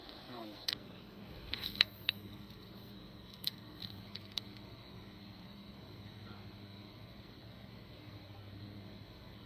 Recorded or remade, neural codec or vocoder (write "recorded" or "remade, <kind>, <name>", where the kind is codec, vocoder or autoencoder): remade, codec, SNAC